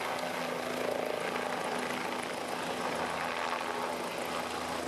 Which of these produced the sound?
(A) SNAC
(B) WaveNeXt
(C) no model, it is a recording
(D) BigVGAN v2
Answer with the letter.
C